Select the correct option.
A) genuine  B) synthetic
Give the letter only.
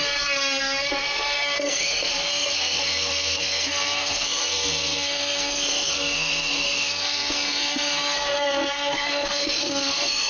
B